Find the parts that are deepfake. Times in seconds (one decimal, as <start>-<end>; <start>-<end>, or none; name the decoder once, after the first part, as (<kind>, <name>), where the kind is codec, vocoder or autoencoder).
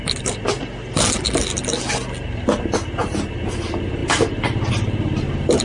none